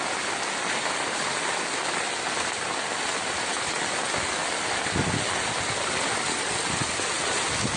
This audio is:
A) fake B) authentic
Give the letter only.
B